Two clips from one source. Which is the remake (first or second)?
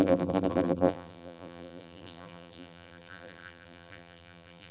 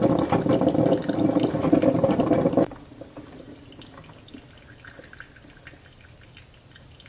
first